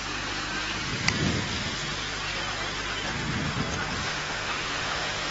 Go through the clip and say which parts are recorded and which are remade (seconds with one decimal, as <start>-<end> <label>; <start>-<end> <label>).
0.0-4.0 recorded; 4.0-5.3 remade